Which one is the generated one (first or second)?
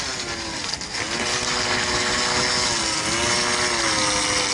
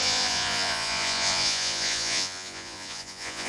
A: second